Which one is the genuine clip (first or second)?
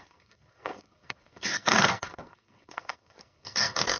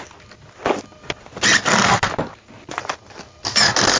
second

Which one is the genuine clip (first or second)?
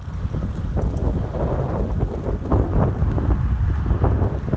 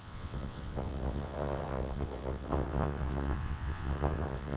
first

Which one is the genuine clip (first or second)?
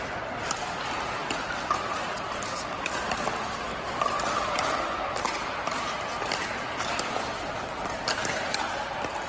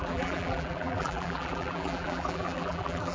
first